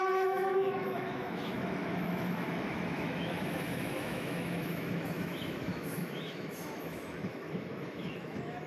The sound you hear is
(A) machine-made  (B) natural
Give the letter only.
A